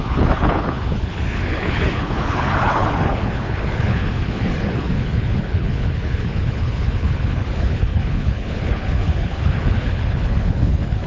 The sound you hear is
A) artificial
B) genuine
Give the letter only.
A